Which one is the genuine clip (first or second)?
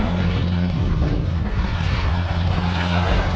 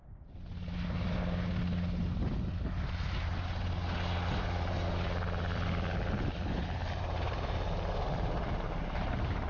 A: second